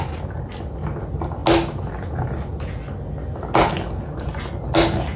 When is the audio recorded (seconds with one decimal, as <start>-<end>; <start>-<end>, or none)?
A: 0.0-5.2